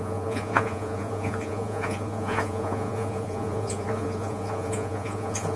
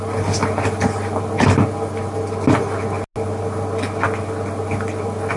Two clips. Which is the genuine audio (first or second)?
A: second